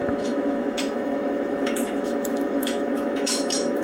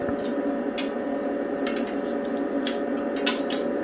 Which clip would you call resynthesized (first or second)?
first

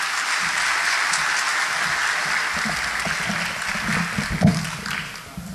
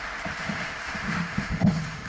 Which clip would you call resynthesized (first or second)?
second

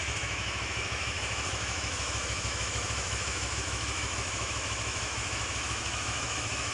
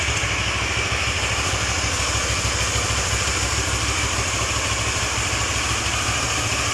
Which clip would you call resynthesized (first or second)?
first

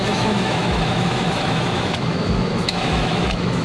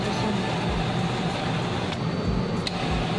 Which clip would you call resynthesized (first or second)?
first